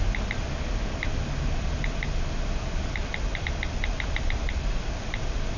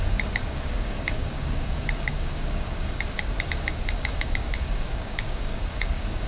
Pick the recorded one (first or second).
first